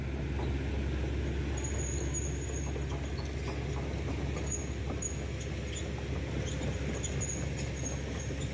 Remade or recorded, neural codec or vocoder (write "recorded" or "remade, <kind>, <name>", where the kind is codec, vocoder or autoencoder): recorded